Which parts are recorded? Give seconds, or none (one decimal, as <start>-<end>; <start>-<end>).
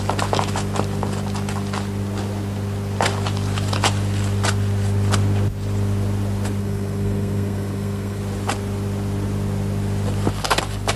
0.0-6.6; 8.2-11.0